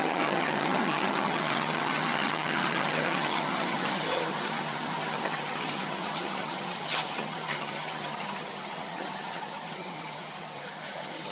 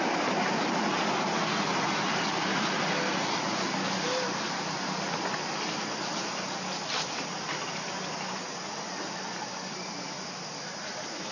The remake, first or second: first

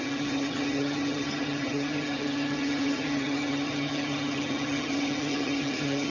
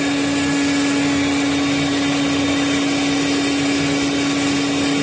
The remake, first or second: first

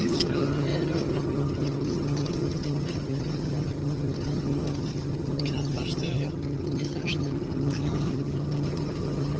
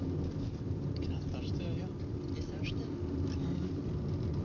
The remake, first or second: first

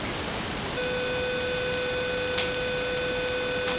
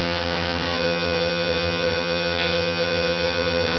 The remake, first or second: second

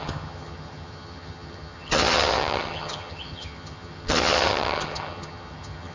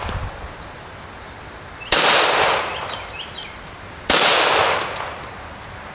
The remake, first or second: first